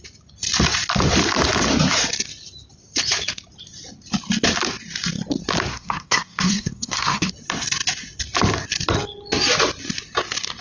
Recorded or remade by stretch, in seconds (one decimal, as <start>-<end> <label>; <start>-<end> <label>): 0.0-5.7 recorded; 5.7-7.3 remade; 7.3-10.6 recorded